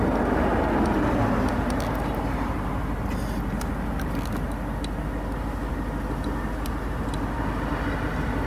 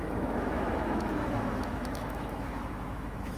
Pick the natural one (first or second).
first